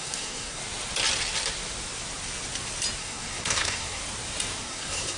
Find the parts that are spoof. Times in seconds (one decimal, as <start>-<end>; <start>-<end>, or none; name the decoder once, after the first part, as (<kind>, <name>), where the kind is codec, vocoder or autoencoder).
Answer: 0.0-0.6 (codec, SNAC); 3.0-4.0; 4.6-5.2